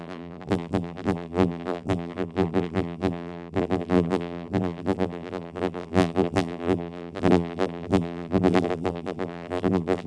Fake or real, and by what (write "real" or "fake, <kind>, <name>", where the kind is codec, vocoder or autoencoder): fake, vocoder, BigVGAN v2